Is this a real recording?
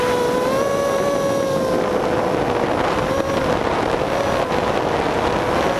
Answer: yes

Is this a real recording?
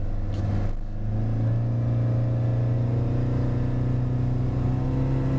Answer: yes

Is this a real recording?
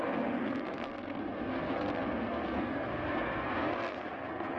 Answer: no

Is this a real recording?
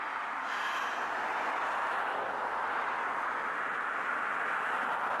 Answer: yes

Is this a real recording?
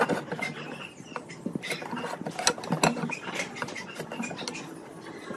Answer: yes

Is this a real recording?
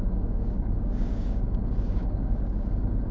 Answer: no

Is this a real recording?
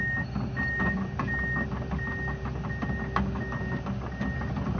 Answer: yes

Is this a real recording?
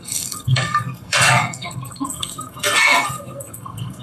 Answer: no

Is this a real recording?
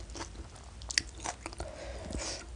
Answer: yes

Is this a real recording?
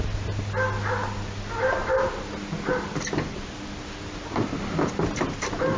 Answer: yes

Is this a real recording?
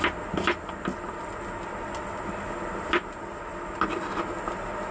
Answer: yes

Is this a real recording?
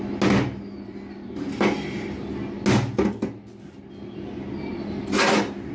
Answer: yes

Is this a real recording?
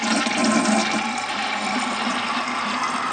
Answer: yes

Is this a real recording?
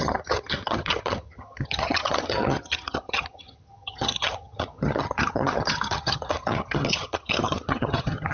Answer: no